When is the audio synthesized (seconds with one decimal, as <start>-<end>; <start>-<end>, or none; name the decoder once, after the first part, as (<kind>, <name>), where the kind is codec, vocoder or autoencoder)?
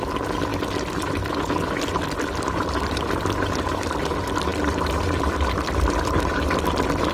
0.0-0.5 (vocoder, BigVGAN v2); 2.4-7.1